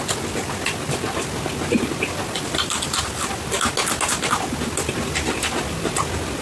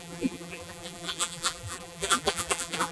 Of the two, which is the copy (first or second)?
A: second